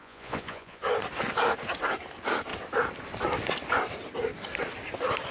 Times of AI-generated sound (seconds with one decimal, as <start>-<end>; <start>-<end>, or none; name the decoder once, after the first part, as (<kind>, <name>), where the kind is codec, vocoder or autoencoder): 0.0-0.8 (vocoder, Vocos)